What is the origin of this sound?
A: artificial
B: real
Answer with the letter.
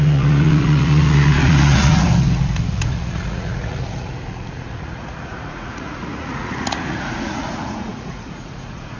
A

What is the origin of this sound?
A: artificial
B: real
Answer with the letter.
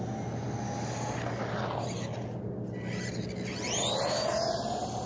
B